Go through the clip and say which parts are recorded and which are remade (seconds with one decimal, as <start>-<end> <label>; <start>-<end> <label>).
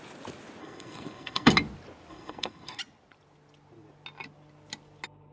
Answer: 0.0-0.6 recorded; 0.6-1.5 remade; 1.5-2.1 recorded; 2.1-2.8 remade; 2.8-5.3 recorded